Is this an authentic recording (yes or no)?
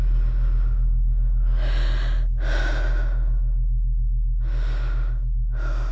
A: yes